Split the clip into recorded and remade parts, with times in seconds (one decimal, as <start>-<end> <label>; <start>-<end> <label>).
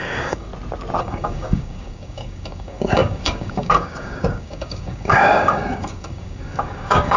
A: 0.0-0.5 remade; 0.5-1.0 recorded; 1.0-7.2 remade